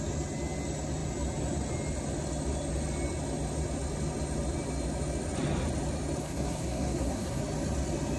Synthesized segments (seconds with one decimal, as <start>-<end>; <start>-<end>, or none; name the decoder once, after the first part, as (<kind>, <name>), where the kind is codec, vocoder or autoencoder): 6.2-7.4 (codec, SNAC)